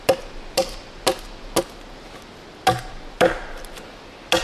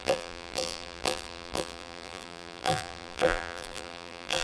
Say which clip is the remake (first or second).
second